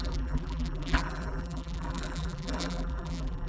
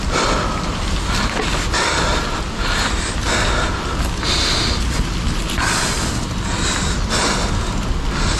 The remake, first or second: first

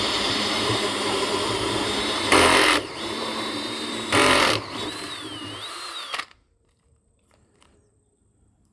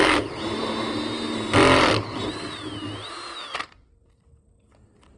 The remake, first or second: first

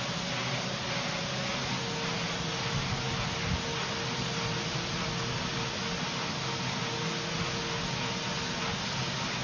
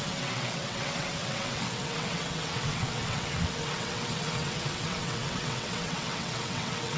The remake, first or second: second